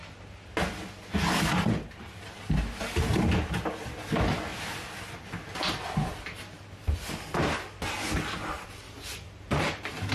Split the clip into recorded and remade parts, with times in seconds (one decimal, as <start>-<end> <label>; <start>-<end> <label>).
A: 0.0-10.1 recorded